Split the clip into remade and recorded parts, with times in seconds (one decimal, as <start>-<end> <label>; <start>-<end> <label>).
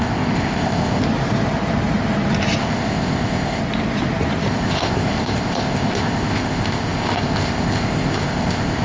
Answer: 0.0-1.0 remade; 1.0-2.6 recorded; 2.6-3.6 remade; 3.6-4.5 recorded; 4.5-8.8 remade